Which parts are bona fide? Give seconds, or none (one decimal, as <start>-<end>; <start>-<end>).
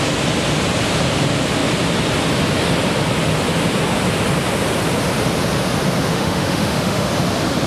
0.0-6.1; 7.1-7.7